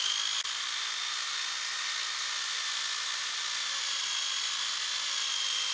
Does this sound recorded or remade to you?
recorded